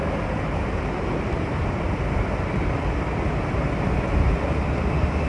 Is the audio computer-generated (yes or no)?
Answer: no